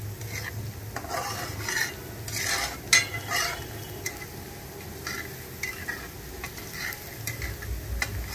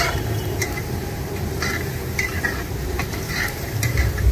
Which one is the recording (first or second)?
first